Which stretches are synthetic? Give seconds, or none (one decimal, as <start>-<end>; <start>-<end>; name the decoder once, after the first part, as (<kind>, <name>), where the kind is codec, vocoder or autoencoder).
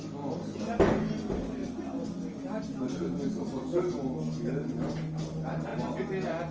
none